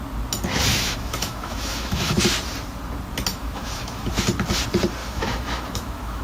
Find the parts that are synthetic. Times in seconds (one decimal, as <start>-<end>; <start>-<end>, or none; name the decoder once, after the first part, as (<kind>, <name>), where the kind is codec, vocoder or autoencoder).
0.7-2.2 (autoencoder, DAC-VAE); 3.3-4.1; 5.0-6.2